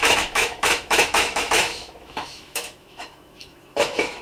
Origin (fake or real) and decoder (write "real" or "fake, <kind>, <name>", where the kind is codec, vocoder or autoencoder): fake, autoencoder, DAC-VAE